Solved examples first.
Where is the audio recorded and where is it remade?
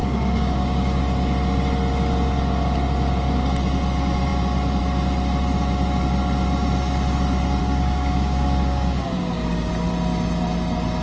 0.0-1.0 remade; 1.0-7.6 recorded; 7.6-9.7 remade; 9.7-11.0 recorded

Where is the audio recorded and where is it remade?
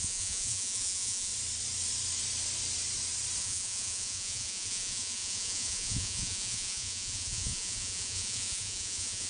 0.0-1.3 remade; 1.3-3.4 recorded; 3.4-9.3 remade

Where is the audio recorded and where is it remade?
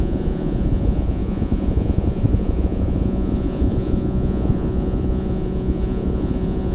0.0-6.7 remade